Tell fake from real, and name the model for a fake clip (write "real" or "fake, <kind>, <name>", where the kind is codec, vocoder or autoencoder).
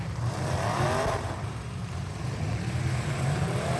fake, vocoder, BigVGAN v2